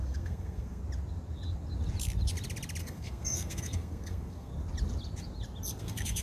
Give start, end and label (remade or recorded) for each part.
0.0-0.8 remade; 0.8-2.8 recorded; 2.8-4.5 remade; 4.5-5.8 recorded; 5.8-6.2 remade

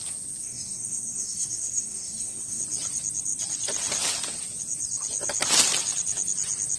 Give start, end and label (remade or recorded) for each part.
0.0-0.4 recorded; 0.4-2.6 remade; 2.6-6.8 recorded

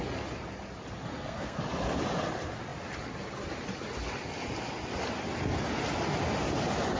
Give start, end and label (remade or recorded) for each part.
0.0-1.1 recorded; 1.1-1.6 remade; 1.6-7.0 recorded

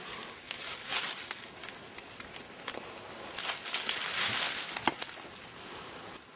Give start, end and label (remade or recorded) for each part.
0.0-6.4 recorded

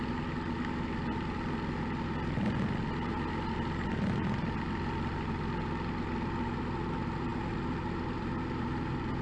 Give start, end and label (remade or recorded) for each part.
0.0-9.2 recorded

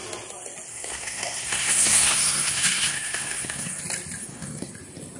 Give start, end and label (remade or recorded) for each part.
0.0-0.7 recorded; 0.7-3.8 remade; 3.8-4.2 recorded; 4.2-4.7 remade; 4.7-5.2 recorded

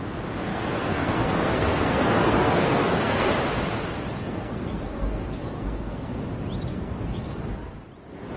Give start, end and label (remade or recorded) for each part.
0.0-0.5 recorded; 0.5-3.3 remade; 3.3-4.2 recorded; 4.2-6.2 remade; 6.2-6.7 recorded; 6.7-7.4 remade; 7.4-8.4 recorded